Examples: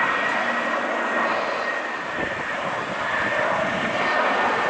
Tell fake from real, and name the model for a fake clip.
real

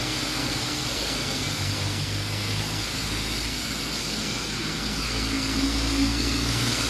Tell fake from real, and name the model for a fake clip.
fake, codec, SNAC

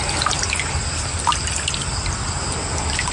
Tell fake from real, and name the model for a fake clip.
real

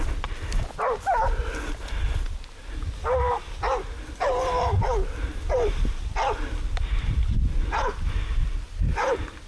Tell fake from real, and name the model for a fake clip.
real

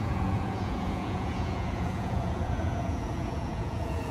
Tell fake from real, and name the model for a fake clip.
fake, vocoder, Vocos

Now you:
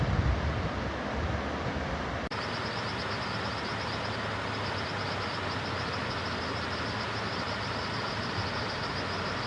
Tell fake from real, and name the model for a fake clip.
real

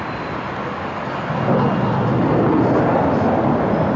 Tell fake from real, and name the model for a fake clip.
real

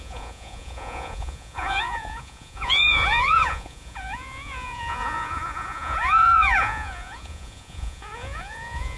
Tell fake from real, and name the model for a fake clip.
fake, vocoder, Vocos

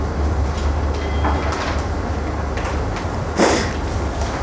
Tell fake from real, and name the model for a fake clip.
real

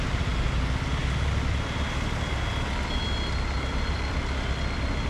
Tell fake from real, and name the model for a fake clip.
real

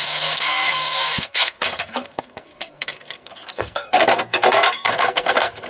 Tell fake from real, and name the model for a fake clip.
fake, codec, SNAC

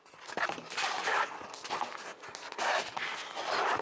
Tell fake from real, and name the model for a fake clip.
real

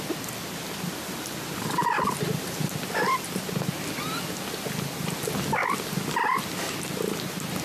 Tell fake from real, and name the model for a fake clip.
real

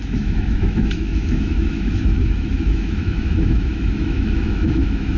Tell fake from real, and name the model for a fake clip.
fake, autoencoder, DAC-VAE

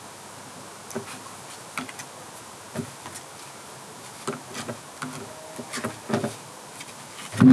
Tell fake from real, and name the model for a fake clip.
real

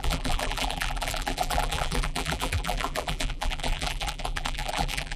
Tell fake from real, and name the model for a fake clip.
fake, vocoder, BigVGAN v2